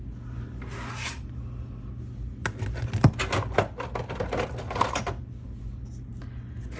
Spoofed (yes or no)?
no